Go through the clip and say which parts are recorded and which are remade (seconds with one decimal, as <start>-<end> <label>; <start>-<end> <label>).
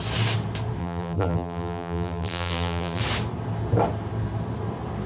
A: 0.0-0.8 recorded; 0.8-3.0 remade; 3.0-5.1 recorded